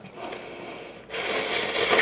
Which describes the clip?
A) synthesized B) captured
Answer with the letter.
B